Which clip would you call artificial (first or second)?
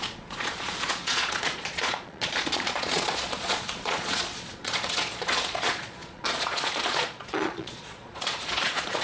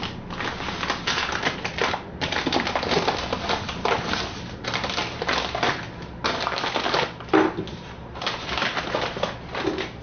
first